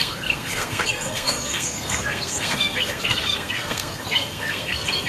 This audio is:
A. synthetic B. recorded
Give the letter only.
A